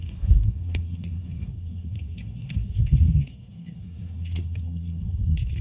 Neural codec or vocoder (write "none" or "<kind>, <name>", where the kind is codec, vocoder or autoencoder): codec, SNAC